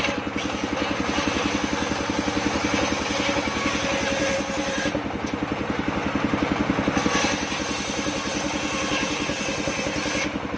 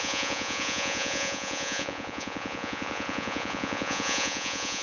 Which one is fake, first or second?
second